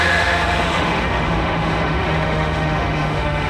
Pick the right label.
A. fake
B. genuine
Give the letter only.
A